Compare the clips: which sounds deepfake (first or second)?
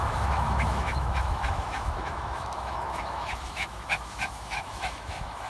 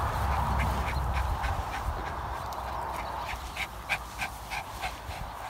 first